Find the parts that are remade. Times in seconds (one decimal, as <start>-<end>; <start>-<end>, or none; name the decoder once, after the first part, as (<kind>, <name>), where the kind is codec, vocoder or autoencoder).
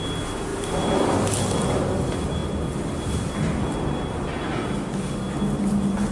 none